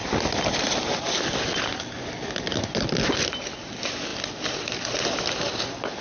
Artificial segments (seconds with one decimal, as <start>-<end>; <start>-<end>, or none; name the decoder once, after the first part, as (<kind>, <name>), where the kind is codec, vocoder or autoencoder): none